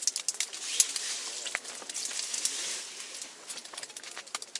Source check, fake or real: real